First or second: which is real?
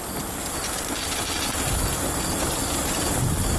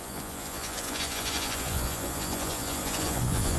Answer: first